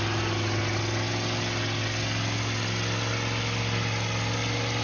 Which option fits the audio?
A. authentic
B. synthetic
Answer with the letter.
A